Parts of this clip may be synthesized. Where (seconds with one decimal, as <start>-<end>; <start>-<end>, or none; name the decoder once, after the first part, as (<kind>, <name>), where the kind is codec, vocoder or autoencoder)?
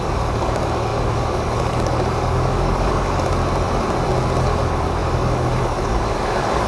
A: 0.0-3.4 (codec, DAC); 4.4-6.7